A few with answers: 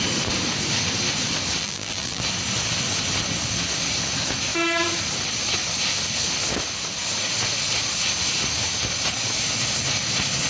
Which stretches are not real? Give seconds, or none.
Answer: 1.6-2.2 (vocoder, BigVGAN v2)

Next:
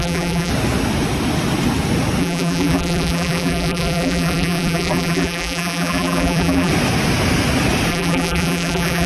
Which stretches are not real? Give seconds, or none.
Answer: 0.0-0.5 (vocoder, BigVGAN v2); 2.2-6.7; 7.9-9.1

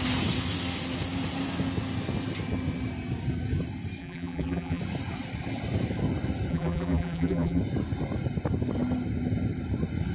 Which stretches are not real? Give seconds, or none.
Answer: 4.0-4.8 (vocoder, BigVGAN v2); 6.5-7.6

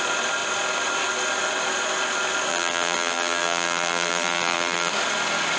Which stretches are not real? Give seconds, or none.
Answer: 2.5-4.9 (vocoder, BigVGAN v2)